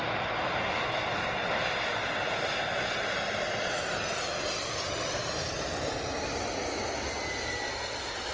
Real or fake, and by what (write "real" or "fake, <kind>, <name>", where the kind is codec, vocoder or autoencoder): real